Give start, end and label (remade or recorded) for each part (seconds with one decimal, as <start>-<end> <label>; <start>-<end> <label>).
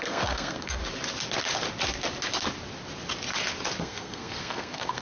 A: 0.0-0.8 remade; 0.8-3.8 recorded; 3.8-5.0 remade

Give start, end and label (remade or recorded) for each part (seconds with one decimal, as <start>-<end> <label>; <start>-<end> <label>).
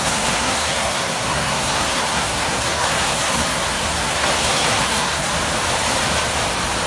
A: 0.0-5.3 remade; 5.3-6.9 recorded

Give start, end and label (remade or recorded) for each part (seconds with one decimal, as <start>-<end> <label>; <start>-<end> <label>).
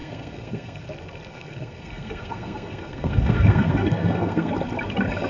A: 0.0-0.8 remade; 0.8-1.3 recorded; 1.3-4.5 remade; 4.5-5.3 recorded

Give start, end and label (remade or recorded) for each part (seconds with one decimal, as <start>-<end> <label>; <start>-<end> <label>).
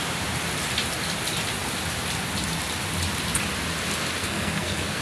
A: 0.0-4.2 recorded; 4.2-5.0 remade